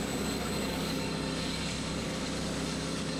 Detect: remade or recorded remade